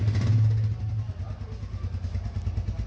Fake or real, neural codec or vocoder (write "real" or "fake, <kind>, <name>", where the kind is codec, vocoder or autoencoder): real